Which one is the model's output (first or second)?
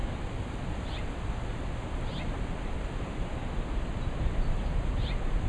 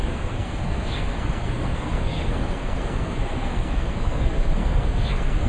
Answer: second